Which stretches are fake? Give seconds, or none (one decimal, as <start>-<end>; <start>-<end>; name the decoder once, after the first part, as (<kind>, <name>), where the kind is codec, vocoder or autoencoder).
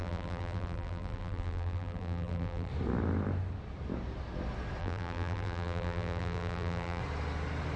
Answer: 0.0-2.7 (vocoder, BigVGAN v2); 4.8-7.0